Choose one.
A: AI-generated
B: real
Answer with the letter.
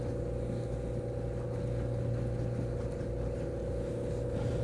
B